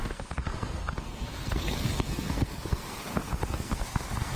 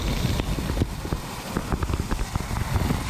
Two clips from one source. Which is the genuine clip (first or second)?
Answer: second